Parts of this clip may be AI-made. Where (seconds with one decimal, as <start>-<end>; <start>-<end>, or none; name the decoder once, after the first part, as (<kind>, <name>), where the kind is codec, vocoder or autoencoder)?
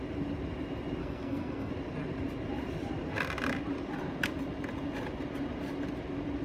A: 1.0-1.7 (codec, SNAC)